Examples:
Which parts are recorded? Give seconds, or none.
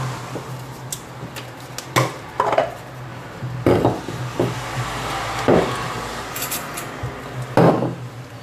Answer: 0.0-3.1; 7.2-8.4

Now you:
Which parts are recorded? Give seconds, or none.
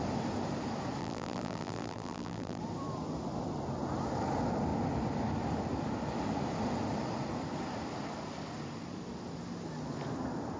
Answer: 0.0-1.0; 2.6-10.6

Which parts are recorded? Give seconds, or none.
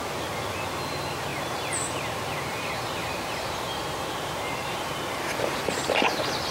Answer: 0.0-1.3; 5.2-6.5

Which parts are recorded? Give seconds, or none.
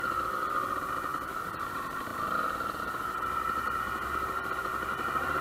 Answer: none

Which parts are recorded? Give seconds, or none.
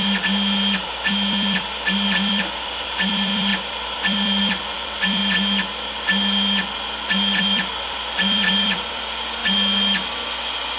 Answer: 5.2-7.4; 9.4-10.8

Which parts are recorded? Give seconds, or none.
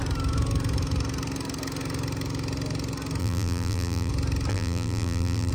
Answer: 0.0-3.2; 4.1-4.5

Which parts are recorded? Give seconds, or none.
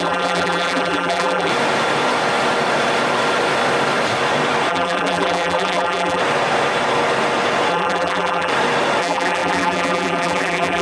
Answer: 1.5-4.7; 6.2-7.7; 8.5-9.0